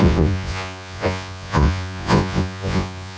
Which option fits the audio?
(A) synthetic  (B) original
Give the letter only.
A